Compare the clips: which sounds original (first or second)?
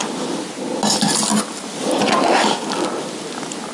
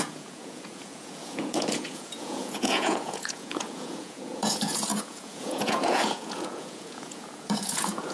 first